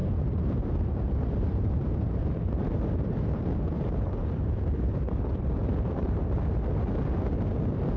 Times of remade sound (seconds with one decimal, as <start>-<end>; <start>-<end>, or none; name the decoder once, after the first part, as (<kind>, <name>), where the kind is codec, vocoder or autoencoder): 0.0-4.8 (vocoder, BigVGAN v2); 5.6-6.4